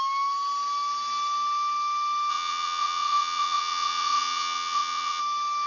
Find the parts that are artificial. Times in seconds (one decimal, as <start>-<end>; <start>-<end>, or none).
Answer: 2.3-5.2